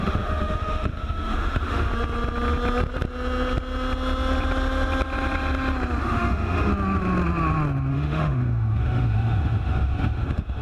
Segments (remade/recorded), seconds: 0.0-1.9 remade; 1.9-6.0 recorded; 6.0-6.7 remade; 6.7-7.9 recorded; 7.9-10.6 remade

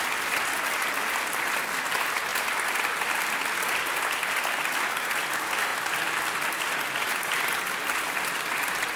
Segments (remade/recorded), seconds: 0.0-9.0 recorded

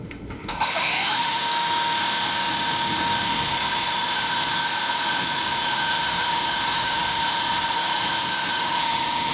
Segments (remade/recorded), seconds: 0.0-9.3 remade

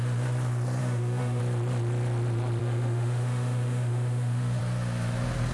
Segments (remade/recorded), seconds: 0.0-0.8 recorded; 0.8-1.4 remade; 1.4-2.6 recorded; 2.6-4.6 remade; 4.6-5.5 recorded

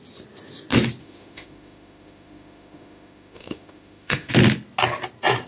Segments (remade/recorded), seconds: 0.0-1.0 recorded; 1.0-4.3 remade; 4.3-5.5 recorded